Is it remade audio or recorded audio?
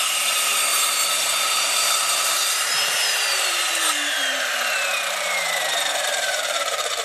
remade